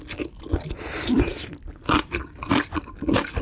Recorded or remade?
recorded